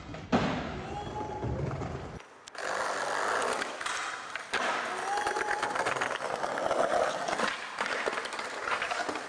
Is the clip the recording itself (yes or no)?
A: yes